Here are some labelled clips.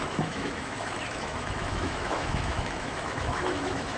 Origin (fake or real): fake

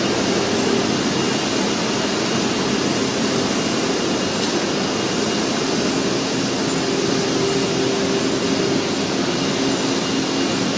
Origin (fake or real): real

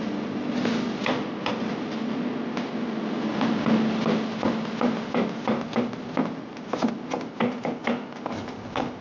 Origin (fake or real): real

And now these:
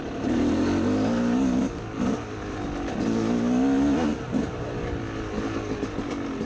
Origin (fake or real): real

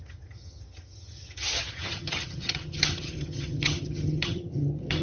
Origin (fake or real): fake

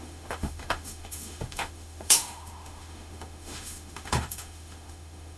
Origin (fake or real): fake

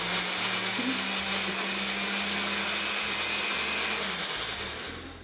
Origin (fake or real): real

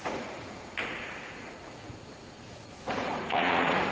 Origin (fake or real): fake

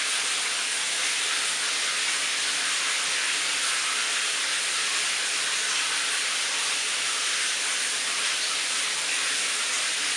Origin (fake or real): real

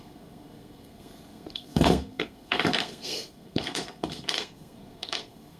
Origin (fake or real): fake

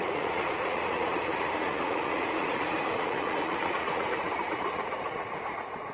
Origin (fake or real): fake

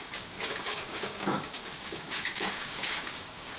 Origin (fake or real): fake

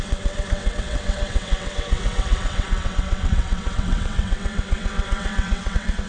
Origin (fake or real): fake